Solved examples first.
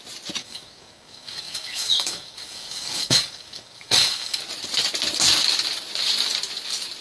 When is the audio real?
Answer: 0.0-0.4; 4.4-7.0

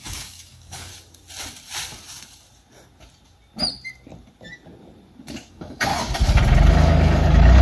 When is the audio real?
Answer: 0.9-5.5; 5.9-6.7

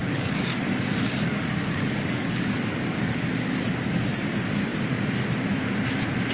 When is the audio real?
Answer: 3.7-6.3